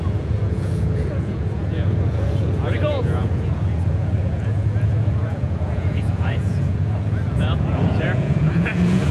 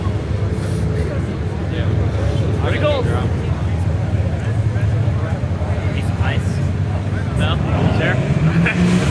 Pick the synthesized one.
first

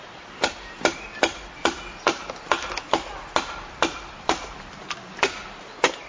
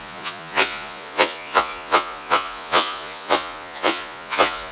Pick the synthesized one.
second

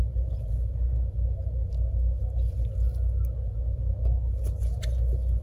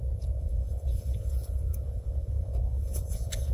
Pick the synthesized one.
second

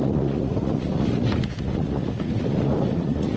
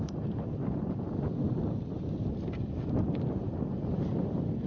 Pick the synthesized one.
first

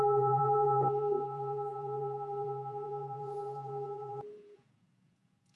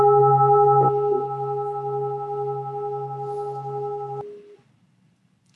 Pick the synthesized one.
first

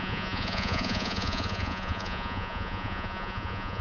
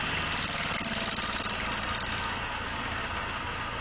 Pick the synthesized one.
first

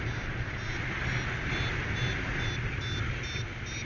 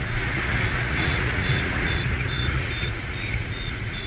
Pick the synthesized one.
second